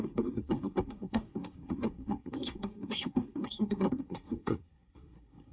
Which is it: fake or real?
fake